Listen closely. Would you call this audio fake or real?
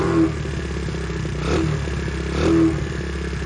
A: real